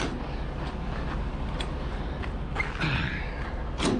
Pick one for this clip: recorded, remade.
recorded